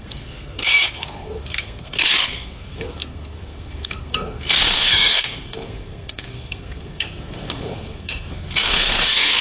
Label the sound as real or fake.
fake